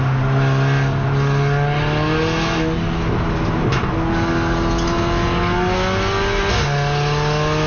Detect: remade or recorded recorded